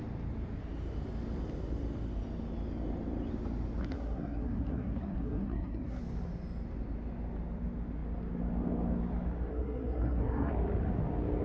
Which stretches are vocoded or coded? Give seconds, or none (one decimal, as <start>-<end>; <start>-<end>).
3.8-6.0; 9.5-10.5